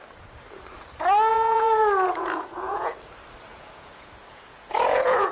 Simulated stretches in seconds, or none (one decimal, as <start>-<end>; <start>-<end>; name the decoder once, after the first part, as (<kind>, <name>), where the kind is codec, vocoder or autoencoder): 1.3-2.9 (vocoder, Vocos); 3.5-5.3